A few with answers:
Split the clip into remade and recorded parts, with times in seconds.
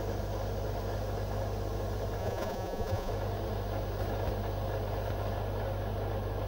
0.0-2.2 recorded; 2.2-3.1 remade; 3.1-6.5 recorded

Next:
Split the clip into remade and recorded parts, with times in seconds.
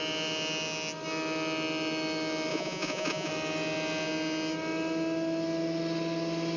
0.0-2.5 recorded; 2.5-3.3 remade; 3.3-6.6 recorded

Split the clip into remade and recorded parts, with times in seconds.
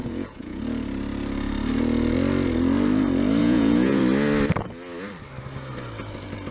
0.0-0.6 remade; 0.6-3.4 recorded; 3.4-4.0 remade; 4.0-6.5 recorded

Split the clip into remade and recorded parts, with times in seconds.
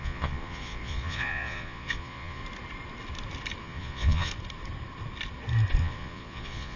0.0-2.4 remade; 2.4-3.6 recorded; 3.6-4.3 remade; 4.3-5.8 recorded; 5.8-6.8 remade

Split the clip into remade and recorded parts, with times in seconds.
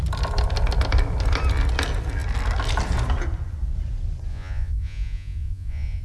0.0-4.3 recorded; 4.3-6.0 remade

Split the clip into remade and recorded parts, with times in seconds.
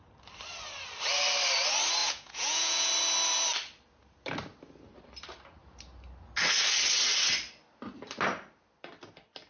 0.0-2.0 recorded; 2.0-2.9 remade; 2.9-9.5 recorded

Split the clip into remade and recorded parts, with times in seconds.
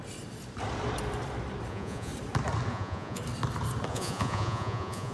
0.0-1.7 recorded; 1.7-2.1 remade; 2.1-2.7 recorded; 2.7-3.2 remade; 3.2-3.9 recorded; 3.9-5.1 remade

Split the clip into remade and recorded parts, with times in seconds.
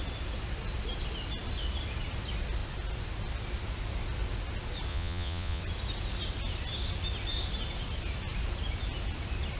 0.0-4.9 recorded; 4.9-5.6 remade; 5.6-9.6 recorded